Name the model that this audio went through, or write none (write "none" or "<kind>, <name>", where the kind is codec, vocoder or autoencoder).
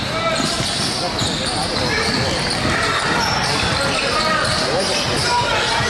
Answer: none